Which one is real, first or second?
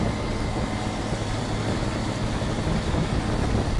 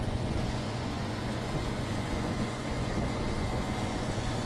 first